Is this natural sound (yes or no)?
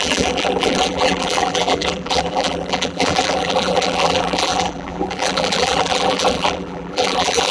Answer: no